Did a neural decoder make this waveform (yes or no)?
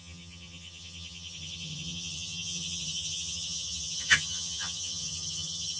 yes